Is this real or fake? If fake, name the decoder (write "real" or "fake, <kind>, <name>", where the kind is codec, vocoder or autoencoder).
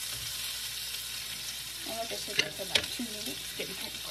real